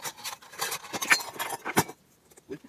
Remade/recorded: recorded